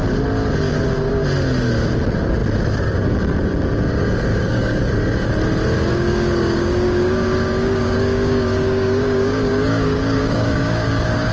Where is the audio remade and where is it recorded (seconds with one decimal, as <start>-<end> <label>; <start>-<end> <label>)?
0.0-4.3 recorded; 4.3-4.8 remade; 4.8-5.9 recorded; 5.9-11.3 remade